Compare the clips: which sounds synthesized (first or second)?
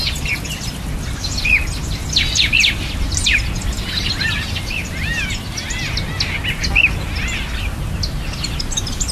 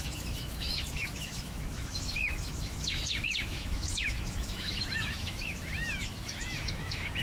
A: second